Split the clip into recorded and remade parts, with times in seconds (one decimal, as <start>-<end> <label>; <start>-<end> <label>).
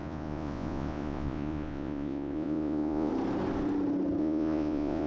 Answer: 0.0-3.1 remade; 3.1-4.2 recorded; 4.2-5.1 remade